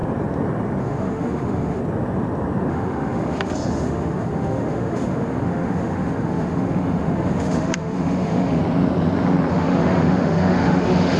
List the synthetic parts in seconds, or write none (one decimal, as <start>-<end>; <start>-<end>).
0.8-1.8; 2.7-8.6; 9.5-11.2